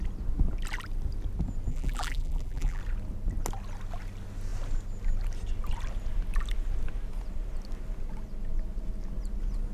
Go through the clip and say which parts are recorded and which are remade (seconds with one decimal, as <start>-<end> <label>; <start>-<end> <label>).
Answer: 0.0-1.7 recorded; 1.7-2.8 remade; 2.8-9.7 recorded